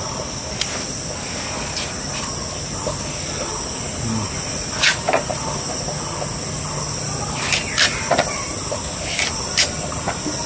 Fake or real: real